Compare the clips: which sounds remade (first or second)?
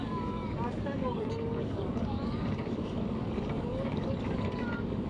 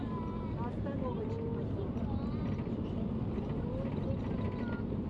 first